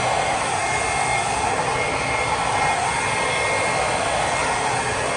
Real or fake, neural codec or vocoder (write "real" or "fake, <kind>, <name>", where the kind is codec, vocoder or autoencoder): real